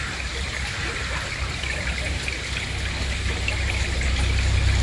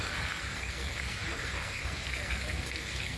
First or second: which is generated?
second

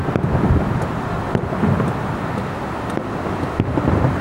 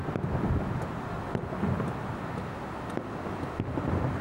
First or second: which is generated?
first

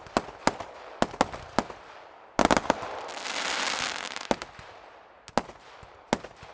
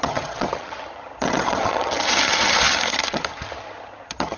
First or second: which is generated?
second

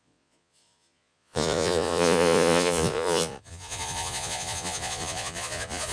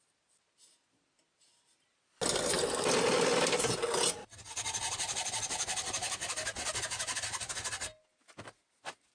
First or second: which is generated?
first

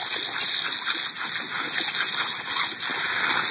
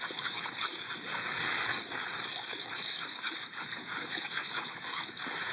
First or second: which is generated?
second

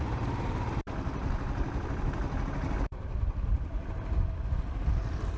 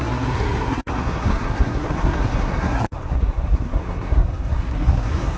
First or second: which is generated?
second